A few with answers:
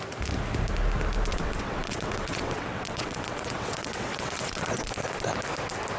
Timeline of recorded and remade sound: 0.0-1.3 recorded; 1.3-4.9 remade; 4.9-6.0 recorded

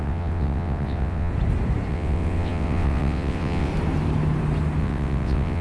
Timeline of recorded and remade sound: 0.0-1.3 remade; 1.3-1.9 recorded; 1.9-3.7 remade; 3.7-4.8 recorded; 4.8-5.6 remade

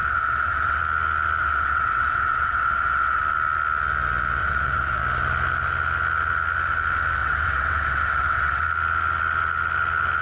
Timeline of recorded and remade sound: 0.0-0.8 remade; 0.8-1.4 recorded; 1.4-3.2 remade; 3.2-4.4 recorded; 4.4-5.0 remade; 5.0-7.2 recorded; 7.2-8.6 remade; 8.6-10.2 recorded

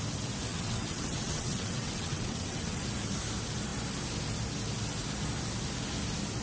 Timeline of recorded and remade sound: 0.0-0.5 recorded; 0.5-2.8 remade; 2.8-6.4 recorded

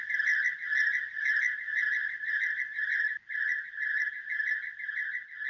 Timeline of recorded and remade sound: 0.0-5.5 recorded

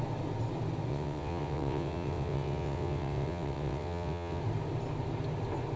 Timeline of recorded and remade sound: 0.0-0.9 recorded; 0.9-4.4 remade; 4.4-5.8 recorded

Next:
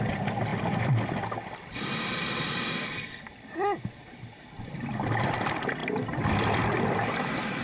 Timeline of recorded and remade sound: 0.0-7.6 recorded

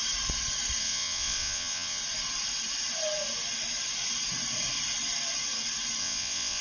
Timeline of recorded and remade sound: 0.0-0.8 recorded; 0.8-2.0 remade; 2.0-6.0 recorded; 6.0-6.6 remade